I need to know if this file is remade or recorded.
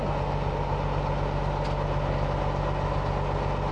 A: recorded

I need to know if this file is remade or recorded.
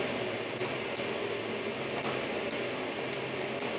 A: recorded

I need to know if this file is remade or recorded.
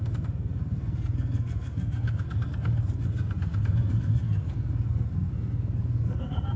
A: remade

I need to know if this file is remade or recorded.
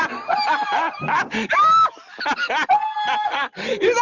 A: recorded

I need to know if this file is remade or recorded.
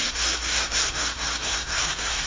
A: remade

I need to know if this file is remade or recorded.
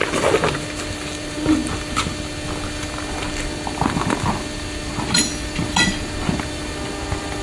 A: recorded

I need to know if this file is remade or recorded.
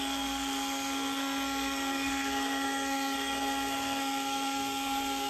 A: remade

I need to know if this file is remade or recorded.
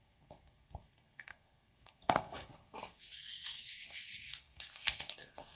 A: remade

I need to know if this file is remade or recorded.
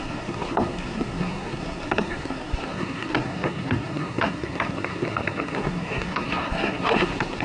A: remade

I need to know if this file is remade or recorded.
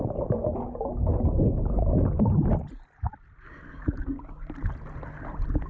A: recorded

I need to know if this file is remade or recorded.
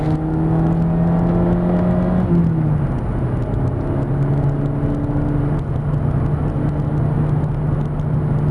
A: recorded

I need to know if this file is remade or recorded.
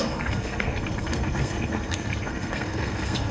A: remade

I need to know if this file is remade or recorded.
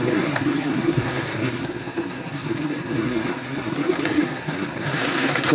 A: remade